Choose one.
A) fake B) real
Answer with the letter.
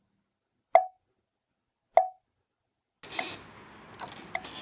B